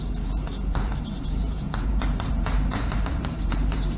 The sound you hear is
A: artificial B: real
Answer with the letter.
A